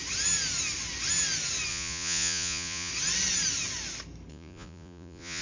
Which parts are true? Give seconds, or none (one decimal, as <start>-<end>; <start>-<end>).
0.0-1.7; 2.9-4.3